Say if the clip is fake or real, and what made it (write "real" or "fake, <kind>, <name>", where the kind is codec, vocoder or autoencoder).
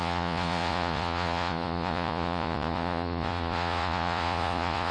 fake, vocoder, Vocos